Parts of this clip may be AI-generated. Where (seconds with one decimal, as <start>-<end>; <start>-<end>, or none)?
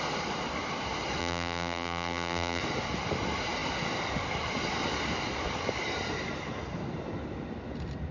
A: 1.2-2.6